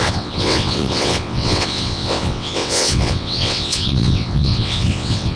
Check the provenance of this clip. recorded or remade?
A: remade